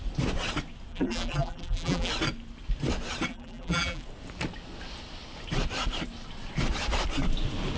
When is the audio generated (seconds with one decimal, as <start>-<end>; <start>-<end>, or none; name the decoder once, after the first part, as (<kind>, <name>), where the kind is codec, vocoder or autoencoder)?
0.9-2.1 (vocoder, BigVGAN v2); 3.3-4.0